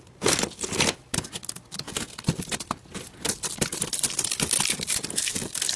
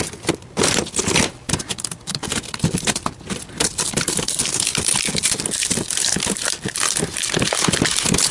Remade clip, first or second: second